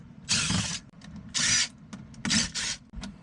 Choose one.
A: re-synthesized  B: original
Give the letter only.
B